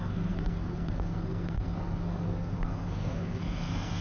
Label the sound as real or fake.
fake